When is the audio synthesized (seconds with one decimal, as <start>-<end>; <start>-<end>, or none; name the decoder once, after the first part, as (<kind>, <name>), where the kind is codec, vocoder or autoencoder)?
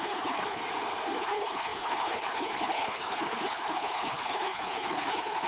0.0-0.6 (codec, HILCodec); 1.2-5.5